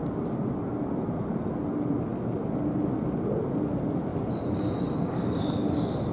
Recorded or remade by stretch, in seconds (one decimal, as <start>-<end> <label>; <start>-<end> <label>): 0.0-6.1 recorded